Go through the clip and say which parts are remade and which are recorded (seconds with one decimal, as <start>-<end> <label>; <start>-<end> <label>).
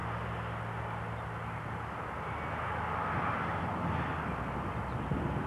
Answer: 0.0-5.5 recorded